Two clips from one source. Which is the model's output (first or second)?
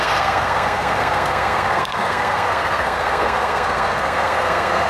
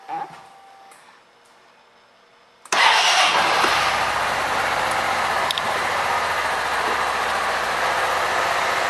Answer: first